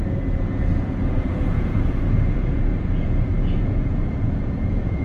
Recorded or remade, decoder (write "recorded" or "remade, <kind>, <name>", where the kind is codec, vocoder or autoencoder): remade, vocoder, Vocos